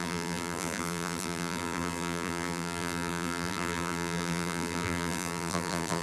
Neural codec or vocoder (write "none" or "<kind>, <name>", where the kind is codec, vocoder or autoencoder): vocoder, BigVGAN v2